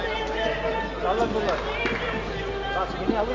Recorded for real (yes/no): yes